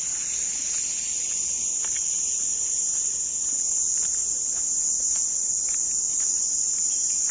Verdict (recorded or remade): recorded